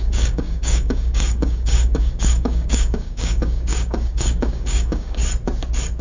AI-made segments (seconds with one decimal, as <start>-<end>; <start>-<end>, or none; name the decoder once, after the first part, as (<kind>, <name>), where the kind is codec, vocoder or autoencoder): 0.0-5.2 (codec, DAC)